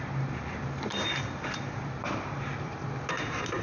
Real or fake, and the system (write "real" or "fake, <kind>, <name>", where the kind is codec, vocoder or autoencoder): fake, vocoder, BigVGAN v2